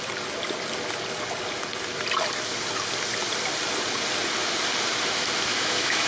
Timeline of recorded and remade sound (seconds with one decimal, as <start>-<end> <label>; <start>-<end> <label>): 0.0-5.5 recorded; 5.5-6.1 remade